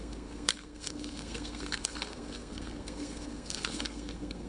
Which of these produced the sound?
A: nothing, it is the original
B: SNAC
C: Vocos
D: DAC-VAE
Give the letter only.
B